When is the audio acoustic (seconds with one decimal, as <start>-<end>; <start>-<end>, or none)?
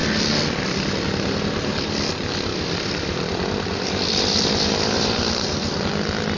0.0-2.5; 5.8-6.4